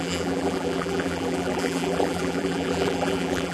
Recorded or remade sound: remade